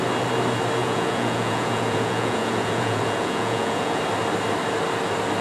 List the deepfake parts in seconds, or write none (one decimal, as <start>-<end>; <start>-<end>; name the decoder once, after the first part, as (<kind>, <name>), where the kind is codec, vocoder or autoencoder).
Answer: 0.8-4.0 (vocoder, Vocos)